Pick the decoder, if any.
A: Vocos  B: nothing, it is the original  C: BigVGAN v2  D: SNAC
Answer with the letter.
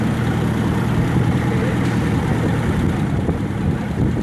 B